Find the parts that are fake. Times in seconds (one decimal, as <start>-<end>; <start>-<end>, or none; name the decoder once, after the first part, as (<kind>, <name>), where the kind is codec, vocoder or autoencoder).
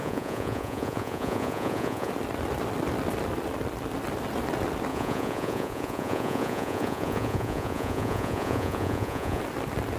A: 0.0-2.1 (vocoder, Vocos); 4.9-9.4